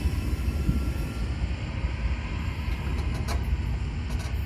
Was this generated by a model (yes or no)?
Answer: no